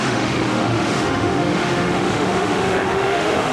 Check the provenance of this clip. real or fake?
fake